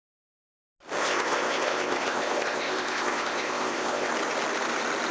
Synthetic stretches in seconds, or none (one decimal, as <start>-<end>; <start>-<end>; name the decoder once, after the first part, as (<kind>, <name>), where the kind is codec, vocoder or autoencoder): 1.0-4.1 (codec, ZipCodec)